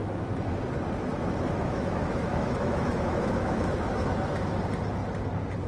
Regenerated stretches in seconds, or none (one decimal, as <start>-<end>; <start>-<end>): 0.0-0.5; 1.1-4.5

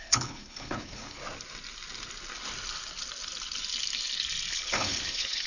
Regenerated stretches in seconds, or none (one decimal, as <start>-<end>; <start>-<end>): 0.0-1.2; 4.5-5.5

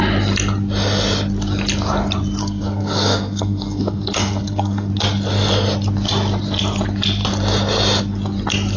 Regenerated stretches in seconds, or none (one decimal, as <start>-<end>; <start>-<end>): 2.4-4.9